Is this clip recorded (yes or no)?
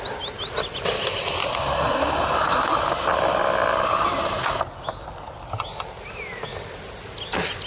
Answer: yes